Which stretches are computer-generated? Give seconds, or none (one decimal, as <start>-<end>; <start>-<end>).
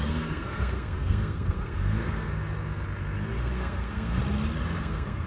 0.0-2.3; 3.4-4.2; 4.8-5.3